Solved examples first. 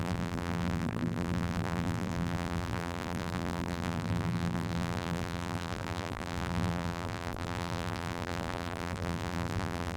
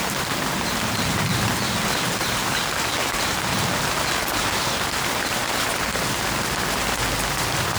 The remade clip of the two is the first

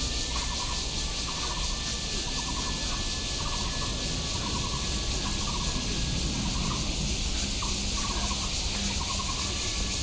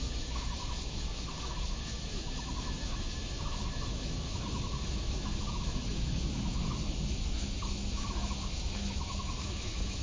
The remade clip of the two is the second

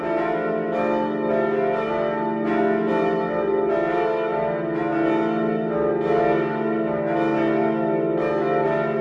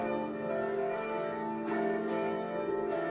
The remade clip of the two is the second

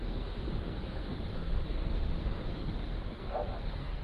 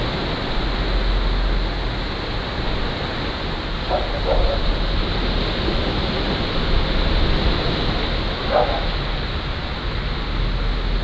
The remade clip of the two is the first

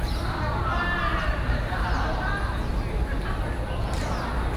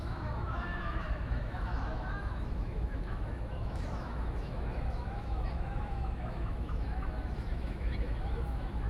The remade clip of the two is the second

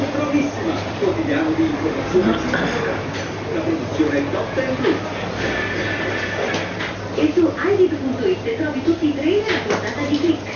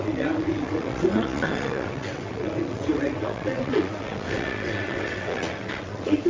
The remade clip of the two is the second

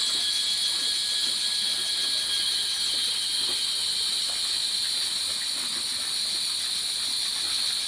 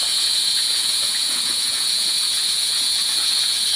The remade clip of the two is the second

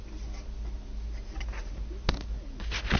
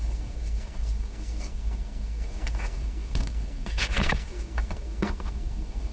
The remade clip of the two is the second